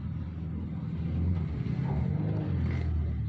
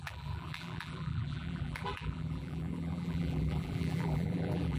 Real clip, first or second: first